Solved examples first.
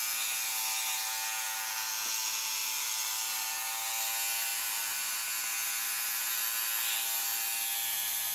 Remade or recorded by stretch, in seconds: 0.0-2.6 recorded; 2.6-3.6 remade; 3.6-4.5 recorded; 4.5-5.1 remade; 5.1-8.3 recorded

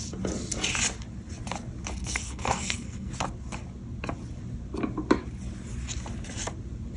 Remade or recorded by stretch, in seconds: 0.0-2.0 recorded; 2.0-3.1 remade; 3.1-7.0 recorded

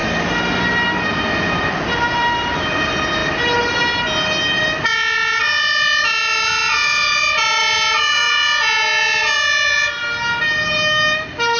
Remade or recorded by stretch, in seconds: 0.0-11.6 recorded

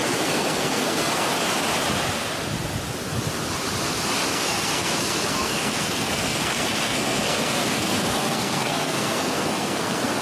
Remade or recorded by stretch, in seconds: 0.0-1.3 remade; 1.3-4.3 recorded; 4.3-10.2 remade